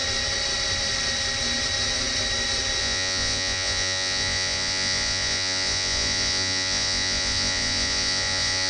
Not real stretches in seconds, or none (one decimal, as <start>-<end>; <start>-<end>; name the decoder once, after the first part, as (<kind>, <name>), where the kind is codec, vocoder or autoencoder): 2.8-8.7 (vocoder, Vocos)